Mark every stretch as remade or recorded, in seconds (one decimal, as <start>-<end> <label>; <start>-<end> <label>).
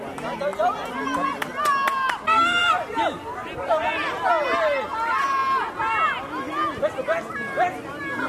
0.0-8.3 recorded